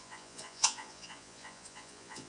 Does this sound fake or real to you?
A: fake